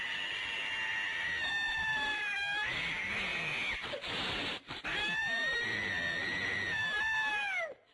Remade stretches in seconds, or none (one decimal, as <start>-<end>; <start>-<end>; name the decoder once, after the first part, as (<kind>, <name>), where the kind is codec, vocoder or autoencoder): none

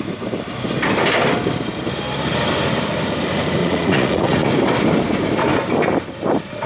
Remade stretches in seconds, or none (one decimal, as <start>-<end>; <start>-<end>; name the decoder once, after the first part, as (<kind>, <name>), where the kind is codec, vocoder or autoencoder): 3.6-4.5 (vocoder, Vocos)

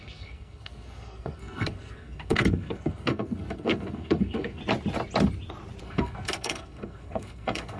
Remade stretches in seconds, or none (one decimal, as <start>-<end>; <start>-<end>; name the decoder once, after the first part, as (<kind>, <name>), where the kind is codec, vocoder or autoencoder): 0.0-4.6 (codec, SNAC); 5.8-7.8

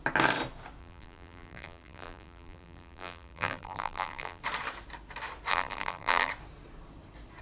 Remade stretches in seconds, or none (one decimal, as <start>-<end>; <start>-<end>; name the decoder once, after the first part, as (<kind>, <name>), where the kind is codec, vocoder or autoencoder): 0.8-4.4 (vocoder, BigVGAN v2); 5.5-6.3

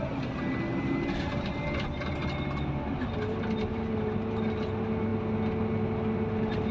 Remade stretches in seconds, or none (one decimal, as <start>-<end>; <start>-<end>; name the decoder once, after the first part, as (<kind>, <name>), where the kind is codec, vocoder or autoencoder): none

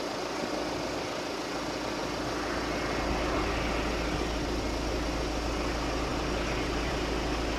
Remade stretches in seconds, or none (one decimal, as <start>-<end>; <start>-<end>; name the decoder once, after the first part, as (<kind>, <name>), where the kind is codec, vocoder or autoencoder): none

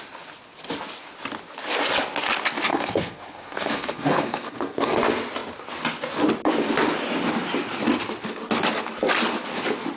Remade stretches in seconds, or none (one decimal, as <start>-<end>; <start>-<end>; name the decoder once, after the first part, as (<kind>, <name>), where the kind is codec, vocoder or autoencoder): 2.7-5.0 (codec, SNAC)